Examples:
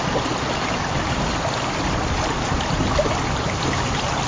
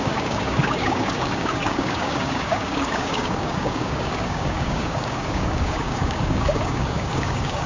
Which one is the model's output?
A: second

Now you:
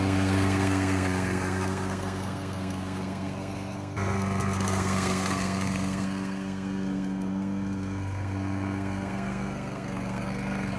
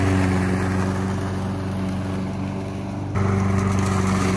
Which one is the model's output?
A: first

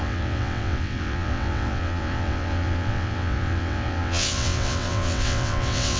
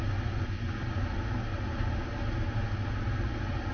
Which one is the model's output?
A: first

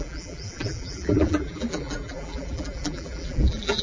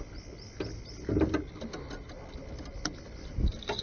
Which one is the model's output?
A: first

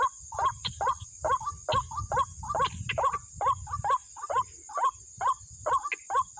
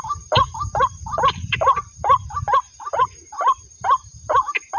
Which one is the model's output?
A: second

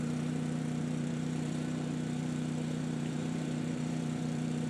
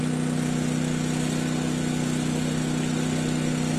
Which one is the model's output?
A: first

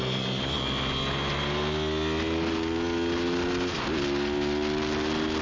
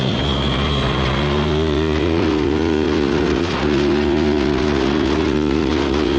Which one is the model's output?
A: second